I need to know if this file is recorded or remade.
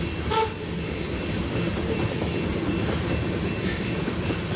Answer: remade